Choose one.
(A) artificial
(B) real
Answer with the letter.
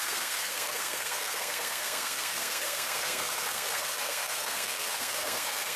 A